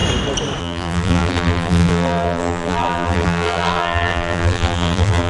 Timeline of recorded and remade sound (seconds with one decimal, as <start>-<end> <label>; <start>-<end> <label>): 0.0-0.6 recorded; 0.6-5.3 remade